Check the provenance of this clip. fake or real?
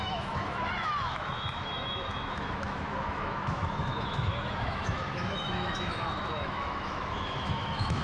fake